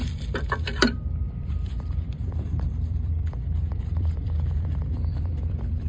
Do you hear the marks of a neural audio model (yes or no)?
yes